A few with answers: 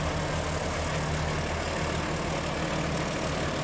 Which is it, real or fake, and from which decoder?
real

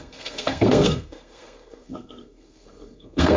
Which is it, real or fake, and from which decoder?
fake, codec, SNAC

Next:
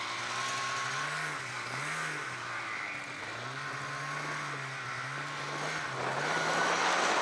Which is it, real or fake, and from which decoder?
real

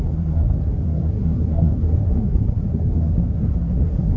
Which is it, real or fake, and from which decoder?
fake, codec, SNAC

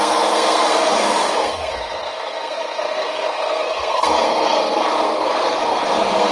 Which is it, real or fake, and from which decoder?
fake, codec, SNAC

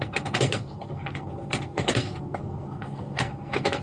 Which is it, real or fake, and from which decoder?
fake, codec, SNAC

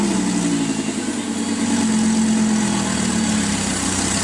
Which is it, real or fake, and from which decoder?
real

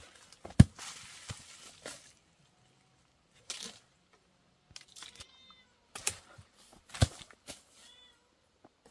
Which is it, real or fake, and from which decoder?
real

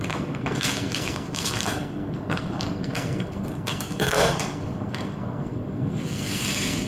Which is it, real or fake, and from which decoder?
fake, codec, SNAC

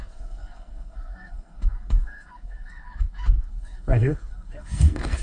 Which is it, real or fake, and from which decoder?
fake, codec, SNAC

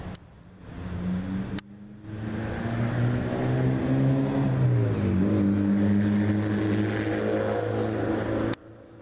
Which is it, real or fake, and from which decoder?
real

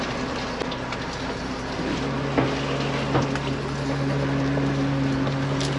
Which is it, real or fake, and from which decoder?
real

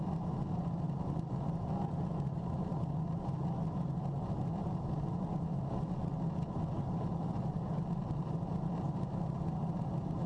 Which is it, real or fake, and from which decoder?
real